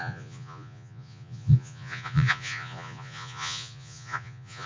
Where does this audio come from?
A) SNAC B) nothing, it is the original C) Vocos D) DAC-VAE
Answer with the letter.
C